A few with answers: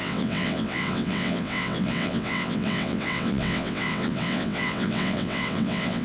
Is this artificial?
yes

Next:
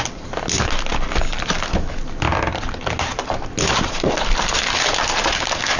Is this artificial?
no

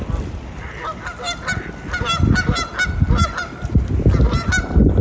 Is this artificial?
no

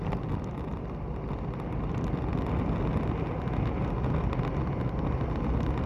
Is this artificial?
no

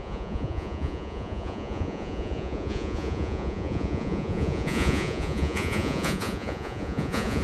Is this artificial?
yes